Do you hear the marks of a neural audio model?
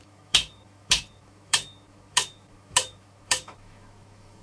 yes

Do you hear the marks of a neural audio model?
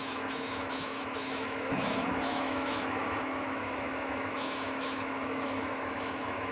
yes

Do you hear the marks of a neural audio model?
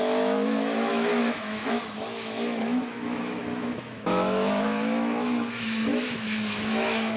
yes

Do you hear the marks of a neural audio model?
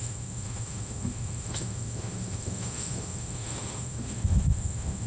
yes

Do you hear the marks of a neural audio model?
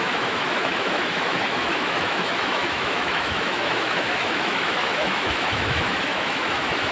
yes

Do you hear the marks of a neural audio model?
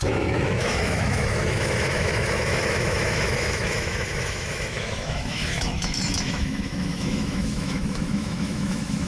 yes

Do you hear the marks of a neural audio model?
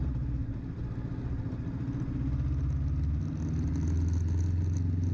no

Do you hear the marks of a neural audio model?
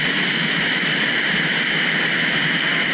no